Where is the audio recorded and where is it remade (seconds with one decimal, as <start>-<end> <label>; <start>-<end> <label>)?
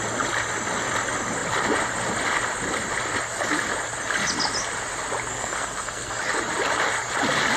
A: 0.0-5.3 recorded; 5.3-6.2 remade; 6.2-7.6 recorded